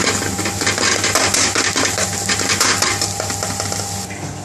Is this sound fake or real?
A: real